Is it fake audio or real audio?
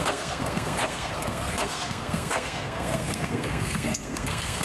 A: fake